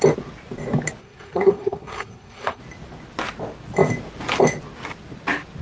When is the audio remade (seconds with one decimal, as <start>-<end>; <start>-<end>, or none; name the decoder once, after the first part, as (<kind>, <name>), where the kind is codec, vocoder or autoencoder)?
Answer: 1.0-2.6 (codec, SNAC)